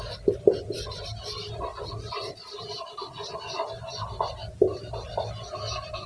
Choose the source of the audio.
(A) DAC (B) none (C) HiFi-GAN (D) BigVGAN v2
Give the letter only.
B